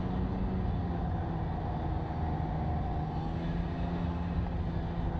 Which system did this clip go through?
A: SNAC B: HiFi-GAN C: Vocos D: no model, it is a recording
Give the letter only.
D